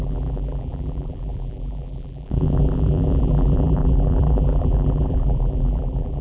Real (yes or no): no